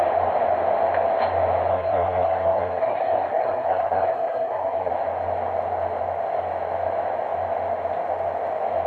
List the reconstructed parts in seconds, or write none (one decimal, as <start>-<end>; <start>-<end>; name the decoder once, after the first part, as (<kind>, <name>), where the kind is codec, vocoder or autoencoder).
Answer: 1.7-4.9 (codec, SNAC)